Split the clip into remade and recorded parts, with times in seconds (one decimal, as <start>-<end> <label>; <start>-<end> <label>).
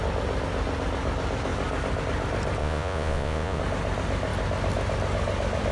0.0-2.6 recorded; 2.6-3.6 remade; 3.6-5.7 recorded